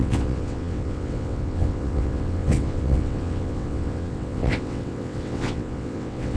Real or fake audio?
fake